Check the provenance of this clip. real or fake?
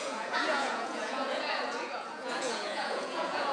fake